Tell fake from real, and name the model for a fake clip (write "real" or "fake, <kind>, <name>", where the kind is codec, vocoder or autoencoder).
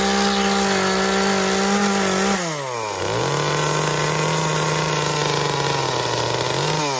real